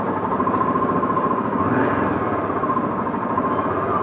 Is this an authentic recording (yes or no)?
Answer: yes